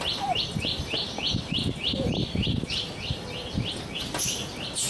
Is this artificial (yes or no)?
no